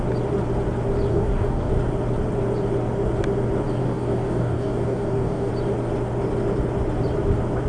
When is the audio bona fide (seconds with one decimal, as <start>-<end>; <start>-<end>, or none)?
0.0-1.1; 1.7-3.8; 5.5-7.7